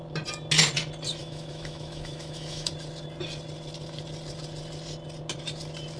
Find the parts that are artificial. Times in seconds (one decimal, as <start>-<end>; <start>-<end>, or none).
1.2-2.7